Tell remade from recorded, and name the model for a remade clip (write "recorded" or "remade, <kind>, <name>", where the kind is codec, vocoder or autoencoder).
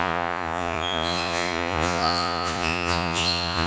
remade, vocoder, Vocos